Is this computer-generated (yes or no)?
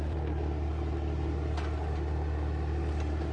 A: no